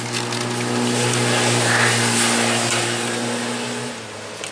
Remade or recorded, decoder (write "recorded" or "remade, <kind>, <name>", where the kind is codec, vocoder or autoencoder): recorded